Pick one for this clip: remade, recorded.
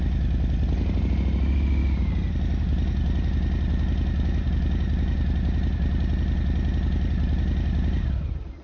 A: recorded